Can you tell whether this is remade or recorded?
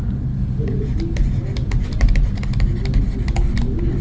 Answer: recorded